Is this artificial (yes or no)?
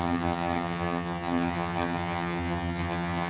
yes